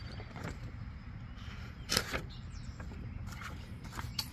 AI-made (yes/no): yes